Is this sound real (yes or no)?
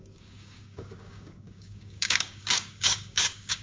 no